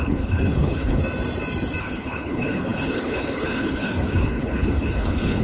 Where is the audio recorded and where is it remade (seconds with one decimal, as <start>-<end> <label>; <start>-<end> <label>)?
0.0-1.0 remade; 1.0-1.8 recorded; 1.8-5.4 remade